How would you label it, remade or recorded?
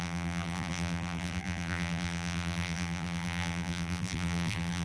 remade